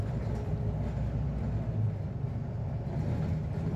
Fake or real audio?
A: real